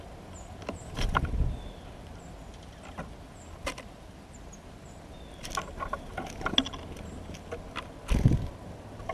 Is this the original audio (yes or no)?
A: yes